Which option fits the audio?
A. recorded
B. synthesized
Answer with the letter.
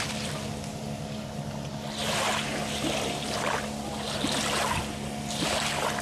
A